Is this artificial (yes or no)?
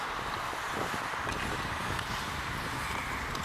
no